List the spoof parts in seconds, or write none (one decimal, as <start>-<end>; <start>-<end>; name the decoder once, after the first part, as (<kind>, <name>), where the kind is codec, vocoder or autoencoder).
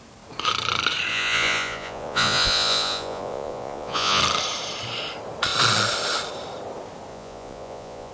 1.1-4.2 (vocoder, Vocos); 7.1-8.1